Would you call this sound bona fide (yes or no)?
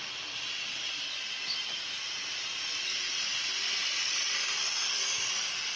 yes